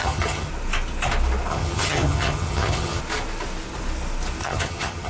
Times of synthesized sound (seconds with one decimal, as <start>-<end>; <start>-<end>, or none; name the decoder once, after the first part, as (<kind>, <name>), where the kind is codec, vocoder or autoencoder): 0.0-0.5 (vocoder, HiFi-GAN); 1.5-3.0; 4.4-5.1